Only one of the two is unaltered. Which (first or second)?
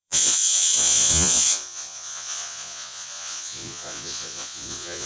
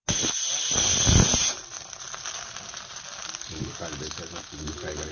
second